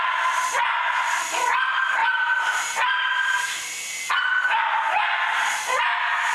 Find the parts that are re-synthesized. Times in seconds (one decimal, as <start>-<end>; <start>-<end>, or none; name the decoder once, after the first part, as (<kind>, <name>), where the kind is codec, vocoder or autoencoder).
2.0-3.4 (vocoder, BigVGAN v2)